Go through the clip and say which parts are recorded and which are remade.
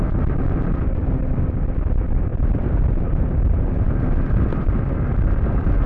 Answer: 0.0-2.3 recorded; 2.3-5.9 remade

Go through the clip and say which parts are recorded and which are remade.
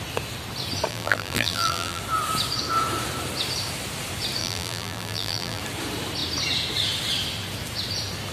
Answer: 0.0-0.9 recorded; 0.9-2.0 remade; 2.0-4.4 recorded; 4.4-5.6 remade; 5.6-8.3 recorded